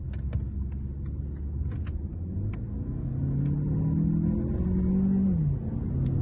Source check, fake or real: real